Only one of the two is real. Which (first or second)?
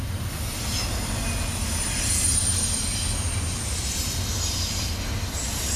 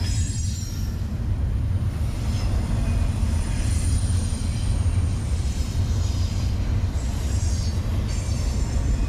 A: first